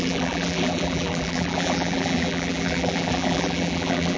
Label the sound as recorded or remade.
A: remade